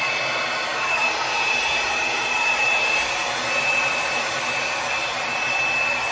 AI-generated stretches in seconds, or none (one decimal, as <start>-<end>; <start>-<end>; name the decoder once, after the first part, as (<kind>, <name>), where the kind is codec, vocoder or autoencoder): 0.7-4.4 (vocoder, BigVGAN v2); 5.0-5.6

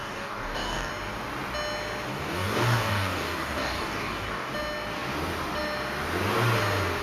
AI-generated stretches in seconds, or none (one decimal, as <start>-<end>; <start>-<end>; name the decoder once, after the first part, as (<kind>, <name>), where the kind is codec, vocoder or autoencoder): 0.0-0.9 (codec, DAC); 2.1-4.5

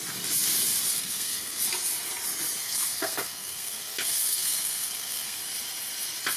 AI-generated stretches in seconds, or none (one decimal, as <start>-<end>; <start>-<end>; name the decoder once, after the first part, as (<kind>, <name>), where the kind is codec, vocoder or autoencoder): 0.9-1.6 (codec, SNAC); 2.6-5.4

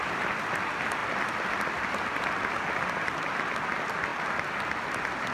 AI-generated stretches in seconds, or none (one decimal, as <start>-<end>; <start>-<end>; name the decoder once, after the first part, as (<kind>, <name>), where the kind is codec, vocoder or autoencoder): none